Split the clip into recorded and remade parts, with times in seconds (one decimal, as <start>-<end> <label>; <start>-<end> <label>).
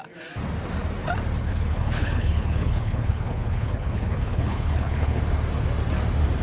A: 0.0-1.4 recorded; 1.4-5.2 remade; 5.2-6.4 recorded